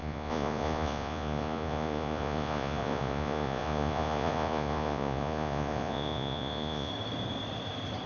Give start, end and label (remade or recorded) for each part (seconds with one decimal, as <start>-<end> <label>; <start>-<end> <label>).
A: 0.0-6.9 remade; 6.9-8.1 recorded